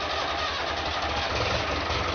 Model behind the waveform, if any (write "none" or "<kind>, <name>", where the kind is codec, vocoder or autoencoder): none